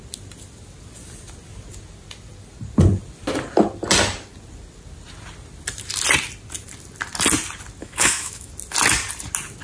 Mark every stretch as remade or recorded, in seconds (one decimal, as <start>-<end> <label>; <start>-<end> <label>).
0.0-7.8 recorded; 7.8-8.5 remade; 8.5-9.6 recorded

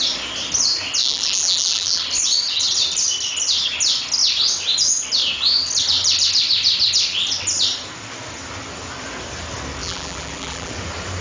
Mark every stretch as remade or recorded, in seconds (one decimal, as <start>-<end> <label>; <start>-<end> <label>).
0.0-1.0 recorded; 1.0-2.0 remade; 2.0-9.8 recorded; 9.8-10.7 remade; 10.7-11.2 recorded

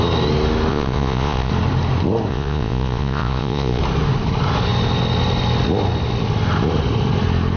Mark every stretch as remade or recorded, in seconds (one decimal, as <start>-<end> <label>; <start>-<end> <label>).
0.0-0.7 recorded; 0.7-1.5 remade; 1.5-2.3 recorded; 2.3-3.8 remade; 3.8-7.6 recorded

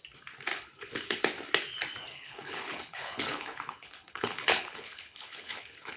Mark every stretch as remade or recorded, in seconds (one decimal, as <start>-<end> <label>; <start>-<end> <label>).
0.0-0.5 recorded; 0.5-1.2 remade; 1.2-2.1 recorded; 2.1-6.0 remade

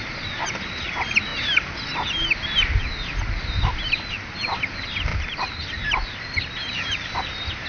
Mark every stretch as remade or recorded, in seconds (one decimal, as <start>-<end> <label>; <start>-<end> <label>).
0.0-7.7 recorded

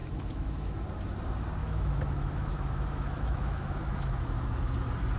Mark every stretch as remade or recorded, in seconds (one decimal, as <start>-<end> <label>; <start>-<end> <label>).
0.0-0.8 remade; 0.8-1.6 recorded; 1.6-4.7 remade; 4.7-5.2 recorded

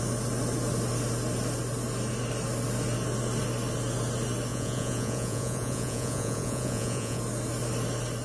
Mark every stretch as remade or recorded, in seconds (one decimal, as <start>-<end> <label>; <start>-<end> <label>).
0.0-4.5 recorded; 4.5-7.2 remade; 7.2-8.2 recorded

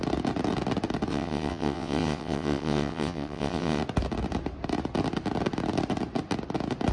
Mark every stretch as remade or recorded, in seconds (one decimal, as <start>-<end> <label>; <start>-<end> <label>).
0.0-1.1 recorded; 1.1-3.8 remade; 3.8-6.9 recorded